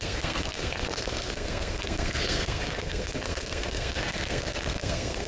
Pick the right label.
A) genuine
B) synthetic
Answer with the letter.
B